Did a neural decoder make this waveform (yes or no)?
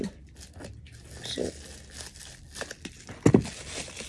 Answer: no